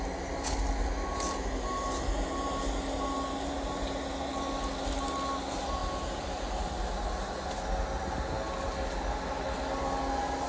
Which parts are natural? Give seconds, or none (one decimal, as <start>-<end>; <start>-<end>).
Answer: 0.0-10.5